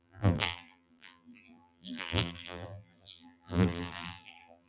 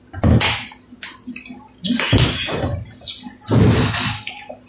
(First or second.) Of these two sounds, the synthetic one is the first